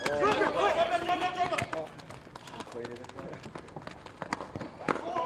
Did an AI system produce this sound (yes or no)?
no